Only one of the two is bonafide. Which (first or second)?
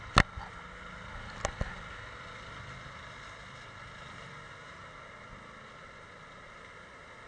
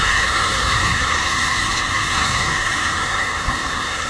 first